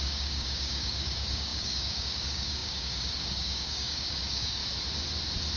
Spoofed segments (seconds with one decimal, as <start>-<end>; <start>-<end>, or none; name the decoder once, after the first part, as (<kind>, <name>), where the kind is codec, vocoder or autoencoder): 0.0-4.6 (codec, DAC)